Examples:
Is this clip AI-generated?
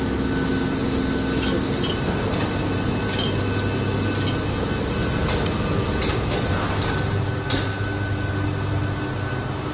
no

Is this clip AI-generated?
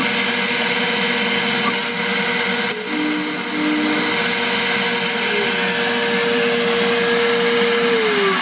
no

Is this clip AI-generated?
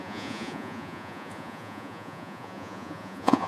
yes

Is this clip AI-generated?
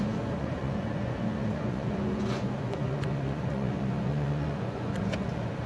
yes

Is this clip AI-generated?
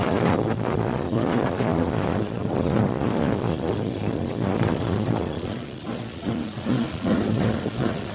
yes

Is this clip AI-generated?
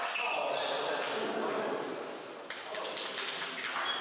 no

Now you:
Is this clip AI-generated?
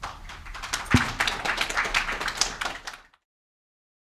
no